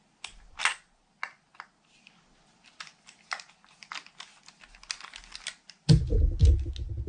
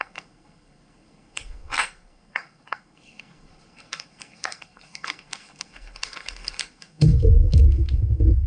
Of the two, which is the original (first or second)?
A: first